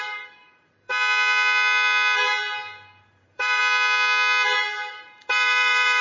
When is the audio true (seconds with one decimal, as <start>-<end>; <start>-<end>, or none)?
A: 0.9-3.1; 3.6-4.9